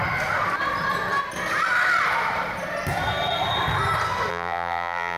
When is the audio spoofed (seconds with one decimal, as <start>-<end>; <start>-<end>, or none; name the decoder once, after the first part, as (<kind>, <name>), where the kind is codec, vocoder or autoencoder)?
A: 4.3-5.2 (vocoder, BigVGAN v2)